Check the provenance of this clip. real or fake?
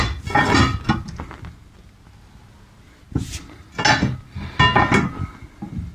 real